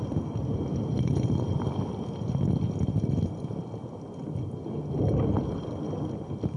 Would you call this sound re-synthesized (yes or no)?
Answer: no